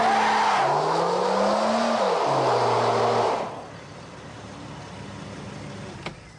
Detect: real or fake real